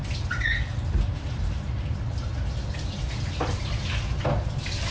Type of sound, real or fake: real